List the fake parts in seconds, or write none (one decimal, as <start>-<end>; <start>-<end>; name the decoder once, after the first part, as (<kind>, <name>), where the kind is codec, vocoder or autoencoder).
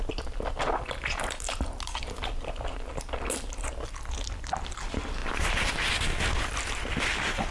none